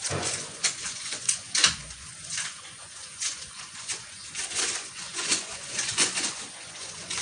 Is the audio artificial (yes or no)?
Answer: yes